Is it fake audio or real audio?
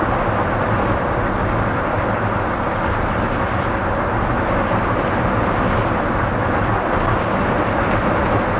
real